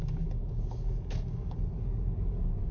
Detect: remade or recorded remade